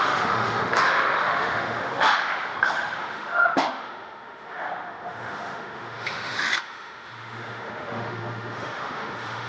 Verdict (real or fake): fake